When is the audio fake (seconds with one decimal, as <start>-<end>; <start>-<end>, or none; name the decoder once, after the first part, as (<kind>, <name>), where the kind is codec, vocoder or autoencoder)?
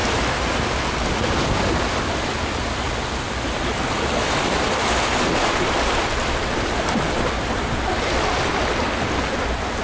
0.6-9.8 (vocoder, BigVGAN v2)